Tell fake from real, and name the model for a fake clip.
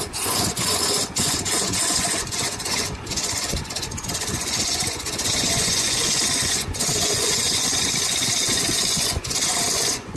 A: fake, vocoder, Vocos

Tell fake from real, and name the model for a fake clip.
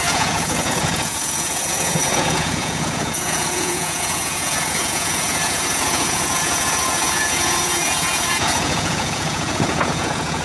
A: fake, vocoder, Vocos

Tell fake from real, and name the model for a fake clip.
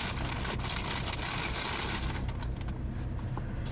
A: real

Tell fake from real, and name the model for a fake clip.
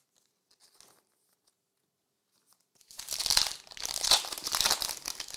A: real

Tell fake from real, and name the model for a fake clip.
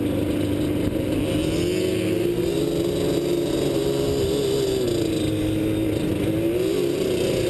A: real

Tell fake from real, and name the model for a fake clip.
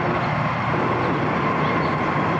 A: real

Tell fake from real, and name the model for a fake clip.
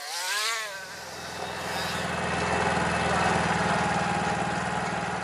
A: real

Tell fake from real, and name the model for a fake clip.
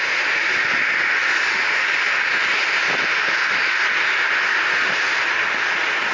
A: real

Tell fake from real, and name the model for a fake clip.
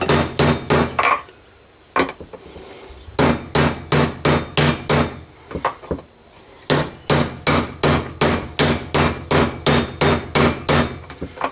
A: real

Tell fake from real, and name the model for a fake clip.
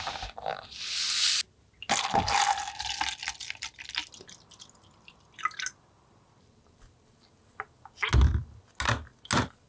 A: real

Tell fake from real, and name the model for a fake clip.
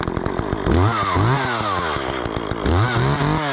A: real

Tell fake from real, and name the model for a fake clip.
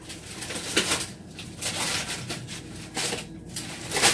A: real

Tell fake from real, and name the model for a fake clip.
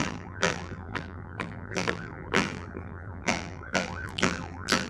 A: fake, vocoder, BigVGAN v2